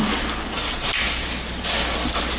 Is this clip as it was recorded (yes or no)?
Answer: yes